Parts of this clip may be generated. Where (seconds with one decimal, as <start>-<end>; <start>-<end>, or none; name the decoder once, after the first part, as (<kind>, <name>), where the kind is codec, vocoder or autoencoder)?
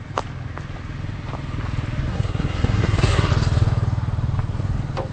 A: 2.1-3.3 (codec, SNAC)